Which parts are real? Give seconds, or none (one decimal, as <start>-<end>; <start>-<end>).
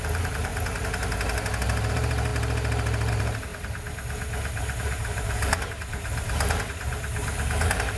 0.5-1.9; 2.3-3.1; 3.5-4.8